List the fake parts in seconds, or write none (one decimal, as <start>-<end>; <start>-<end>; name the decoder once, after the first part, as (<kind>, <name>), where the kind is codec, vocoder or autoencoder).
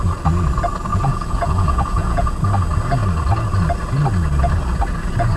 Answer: 0.9-2.3 (vocoder, Vocos)